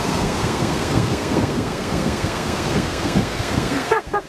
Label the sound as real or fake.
fake